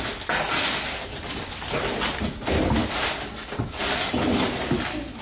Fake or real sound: real